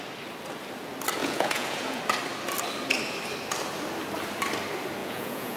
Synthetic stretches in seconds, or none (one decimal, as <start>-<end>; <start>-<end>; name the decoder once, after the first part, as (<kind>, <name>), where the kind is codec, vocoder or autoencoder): 1.2-2.0 (vocoder, Vocos); 5.0-5.6

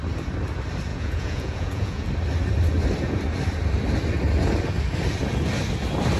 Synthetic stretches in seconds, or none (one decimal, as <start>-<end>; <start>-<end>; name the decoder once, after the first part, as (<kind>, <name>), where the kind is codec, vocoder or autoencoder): 0.9-2.1 (vocoder, Vocos)

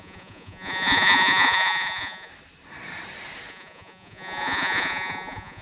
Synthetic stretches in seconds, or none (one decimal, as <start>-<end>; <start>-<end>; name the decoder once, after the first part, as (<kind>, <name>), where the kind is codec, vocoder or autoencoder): 0.0-2.3 (vocoder, Vocos); 3.5-5.6